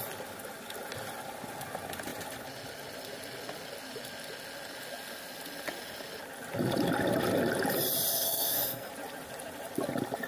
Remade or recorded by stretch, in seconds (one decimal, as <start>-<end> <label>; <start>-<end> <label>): 0.0-8.1 recorded; 8.1-8.9 remade; 8.9-10.3 recorded